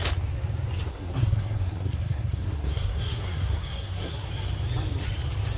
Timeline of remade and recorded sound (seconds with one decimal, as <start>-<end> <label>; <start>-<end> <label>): 0.0-0.9 recorded; 0.9-4.3 remade; 4.3-5.6 recorded